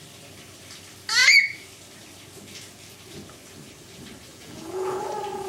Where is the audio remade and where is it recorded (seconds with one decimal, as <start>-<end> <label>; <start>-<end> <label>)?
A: 0.0-4.3 recorded; 4.3-5.0 remade; 5.0-5.5 recorded

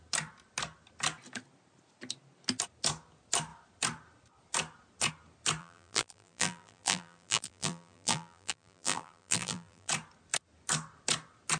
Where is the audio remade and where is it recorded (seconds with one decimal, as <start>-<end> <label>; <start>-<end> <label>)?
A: 0.0-5.6 recorded; 5.6-9.9 remade; 9.9-11.6 recorded

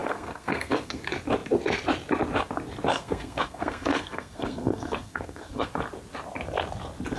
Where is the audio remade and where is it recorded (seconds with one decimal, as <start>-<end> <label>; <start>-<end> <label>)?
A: 0.0-1.0 remade; 1.0-2.9 recorded; 2.9-5.7 remade; 5.7-7.2 recorded

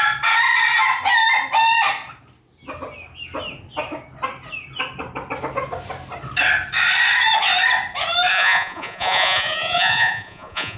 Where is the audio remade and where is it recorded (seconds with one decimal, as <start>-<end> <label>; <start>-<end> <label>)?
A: 0.0-8.3 recorded; 8.3-10.8 remade